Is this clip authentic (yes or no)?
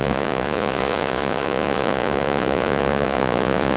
no